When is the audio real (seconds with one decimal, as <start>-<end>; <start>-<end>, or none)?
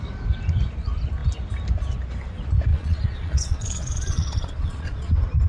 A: 0.0-2.7; 5.1-5.5